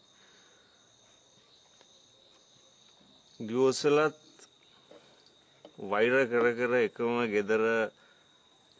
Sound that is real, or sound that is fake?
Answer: real